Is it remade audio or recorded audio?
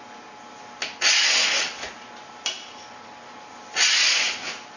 recorded